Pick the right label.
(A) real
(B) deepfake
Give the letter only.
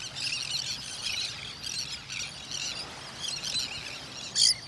A